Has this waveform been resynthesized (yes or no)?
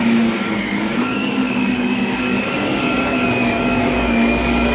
yes